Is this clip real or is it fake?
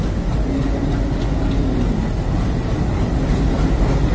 real